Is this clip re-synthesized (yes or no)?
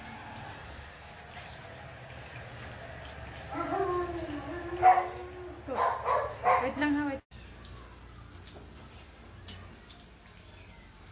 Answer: no